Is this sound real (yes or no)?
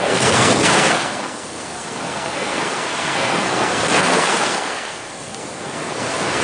no